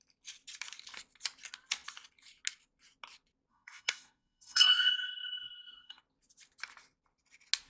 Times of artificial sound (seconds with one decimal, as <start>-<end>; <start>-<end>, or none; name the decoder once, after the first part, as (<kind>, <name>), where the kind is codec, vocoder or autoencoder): 3.5-6.0 (codec, SNAC)